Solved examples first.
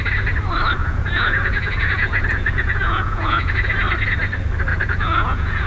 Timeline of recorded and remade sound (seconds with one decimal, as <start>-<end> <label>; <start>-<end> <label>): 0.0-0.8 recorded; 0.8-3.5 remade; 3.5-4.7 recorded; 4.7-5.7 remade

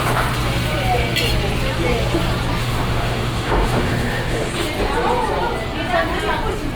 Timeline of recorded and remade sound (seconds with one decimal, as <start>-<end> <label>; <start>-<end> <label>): 0.0-2.6 recorded; 2.6-4.5 remade; 4.5-6.8 recorded

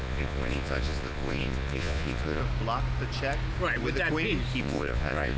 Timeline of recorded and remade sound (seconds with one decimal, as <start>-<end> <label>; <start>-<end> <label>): 0.0-2.4 remade; 2.4-4.6 recorded; 4.6-5.4 remade

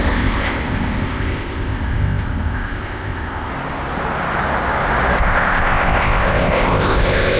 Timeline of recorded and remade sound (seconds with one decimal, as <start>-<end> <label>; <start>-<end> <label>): 0.0-3.5 remade; 3.5-5.2 recorded; 5.2-7.4 remade

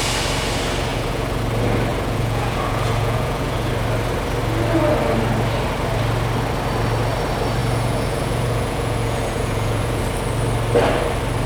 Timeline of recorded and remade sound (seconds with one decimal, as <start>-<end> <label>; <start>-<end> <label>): 0.0-0.9 recorded; 0.9-1.4 remade; 1.4-1.9 recorded; 1.9-3.7 remade; 3.7-7.6 recorded; 7.6-10.0 remade; 10.0-11.5 recorded

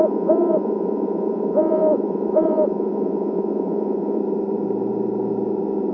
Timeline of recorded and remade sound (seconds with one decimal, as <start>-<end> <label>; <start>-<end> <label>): 0.0-4.2 remade; 4.2-5.9 recorded

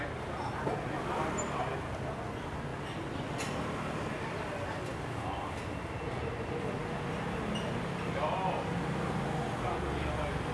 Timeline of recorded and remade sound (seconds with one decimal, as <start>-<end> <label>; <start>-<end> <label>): 0.0-10.5 recorded

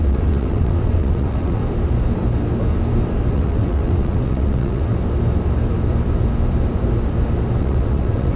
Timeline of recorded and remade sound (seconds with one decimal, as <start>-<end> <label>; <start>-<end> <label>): 0.0-1.6 remade; 1.6-3.3 recorded; 3.3-4.9 remade; 4.9-7.6 recorded; 7.6-8.4 remade